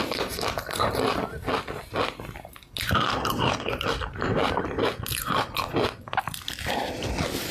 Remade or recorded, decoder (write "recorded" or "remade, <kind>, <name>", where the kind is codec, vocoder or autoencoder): recorded